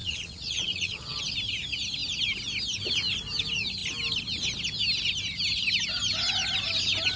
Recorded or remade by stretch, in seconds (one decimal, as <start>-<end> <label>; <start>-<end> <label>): 0.0-1.2 remade; 1.2-7.2 recorded

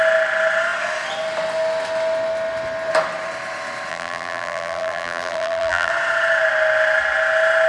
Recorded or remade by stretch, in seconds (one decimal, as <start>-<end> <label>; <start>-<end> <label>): 0.0-3.9 recorded; 3.9-5.9 remade; 5.9-7.7 recorded

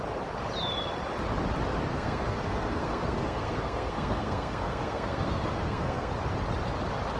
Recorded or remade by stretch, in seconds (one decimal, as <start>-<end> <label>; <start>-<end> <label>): 0.0-1.9 recorded; 1.9-6.1 remade; 6.1-7.2 recorded

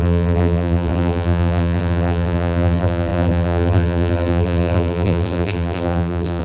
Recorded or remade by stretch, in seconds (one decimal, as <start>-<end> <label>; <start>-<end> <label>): 0.0-6.4 remade

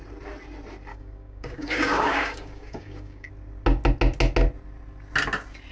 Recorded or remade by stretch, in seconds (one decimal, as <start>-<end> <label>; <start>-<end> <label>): 0.0-0.9 recorded; 0.9-3.3 remade; 3.3-5.7 recorded